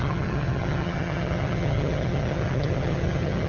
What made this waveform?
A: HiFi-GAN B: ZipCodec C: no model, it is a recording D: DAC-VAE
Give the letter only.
A